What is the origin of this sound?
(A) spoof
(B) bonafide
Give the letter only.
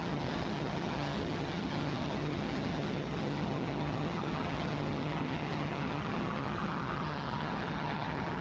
A